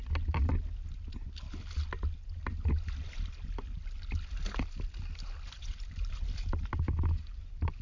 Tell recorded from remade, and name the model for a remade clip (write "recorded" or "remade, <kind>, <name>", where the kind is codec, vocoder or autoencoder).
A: recorded